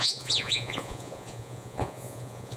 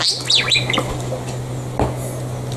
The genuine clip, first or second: second